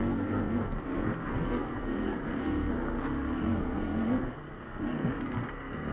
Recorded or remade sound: remade